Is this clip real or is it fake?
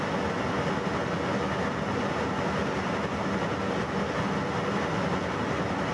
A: real